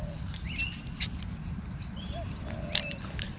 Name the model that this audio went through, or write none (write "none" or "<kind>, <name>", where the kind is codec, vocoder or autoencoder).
none